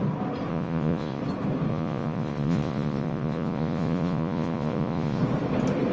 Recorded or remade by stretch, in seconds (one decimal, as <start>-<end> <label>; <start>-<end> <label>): 0.0-0.5 recorded; 0.5-1.2 remade; 1.2-1.7 recorded; 1.7-5.2 remade; 5.2-5.9 recorded